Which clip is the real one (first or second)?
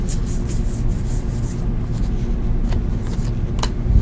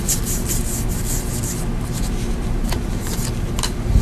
first